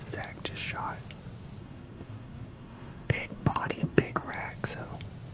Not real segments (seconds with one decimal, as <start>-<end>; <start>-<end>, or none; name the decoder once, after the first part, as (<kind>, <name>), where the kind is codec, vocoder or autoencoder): 1.6-4.3 (codec, SNAC)

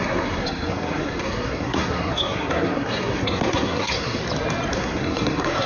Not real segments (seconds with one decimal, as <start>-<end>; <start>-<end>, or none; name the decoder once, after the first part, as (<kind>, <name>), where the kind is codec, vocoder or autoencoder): 0.0-4.2 (codec, SNAC); 4.7-5.7

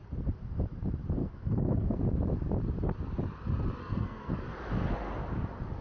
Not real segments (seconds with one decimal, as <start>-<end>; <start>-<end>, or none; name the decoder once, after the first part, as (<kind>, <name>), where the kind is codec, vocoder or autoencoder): 1.2-2.0 (codec, SNAC); 3.8-4.3

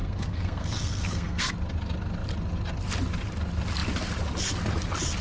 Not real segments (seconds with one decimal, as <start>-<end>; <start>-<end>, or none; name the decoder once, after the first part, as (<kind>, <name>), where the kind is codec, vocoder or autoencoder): 0.0-1.5 (codec, SNAC)

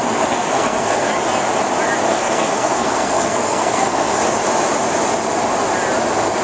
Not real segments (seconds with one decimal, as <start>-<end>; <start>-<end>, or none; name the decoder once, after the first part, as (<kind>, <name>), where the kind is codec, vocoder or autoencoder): 0.0-1.1 (codec, SNAC); 2.1-4.2

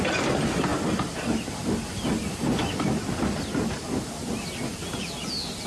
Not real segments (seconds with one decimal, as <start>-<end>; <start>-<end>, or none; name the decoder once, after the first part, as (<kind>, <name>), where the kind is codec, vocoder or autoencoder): none